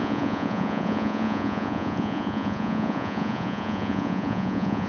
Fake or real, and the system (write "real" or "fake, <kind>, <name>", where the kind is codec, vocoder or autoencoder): fake, vocoder, Vocos